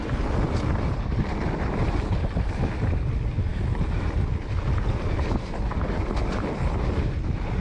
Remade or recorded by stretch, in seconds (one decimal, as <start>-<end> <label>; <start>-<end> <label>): 0.0-7.6 recorded